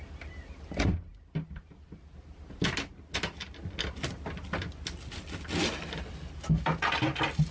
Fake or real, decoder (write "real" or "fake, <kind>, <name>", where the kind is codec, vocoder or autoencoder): real